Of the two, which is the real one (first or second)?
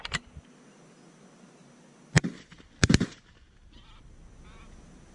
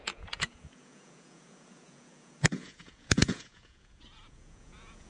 first